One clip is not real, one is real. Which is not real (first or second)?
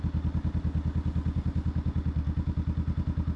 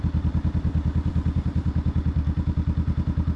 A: second